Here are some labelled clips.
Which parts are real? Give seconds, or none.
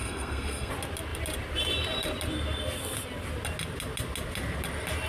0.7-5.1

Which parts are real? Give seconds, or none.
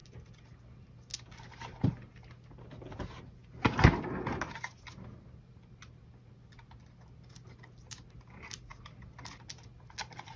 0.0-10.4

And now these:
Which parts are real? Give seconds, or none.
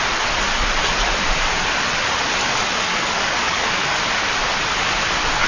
0.0-2.6; 4.0-5.5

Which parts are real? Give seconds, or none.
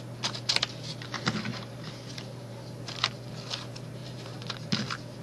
0.0-1.5; 2.7-4.0; 4.7-5.2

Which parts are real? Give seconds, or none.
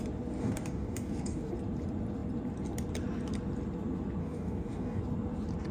0.0-0.4; 1.5-4.2; 5.0-5.7